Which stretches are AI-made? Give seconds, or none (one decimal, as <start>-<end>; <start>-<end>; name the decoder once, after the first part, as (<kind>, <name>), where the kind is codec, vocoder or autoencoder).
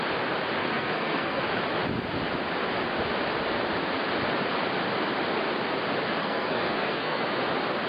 0.6-1.4 (codec, SNAC); 6.2-7.4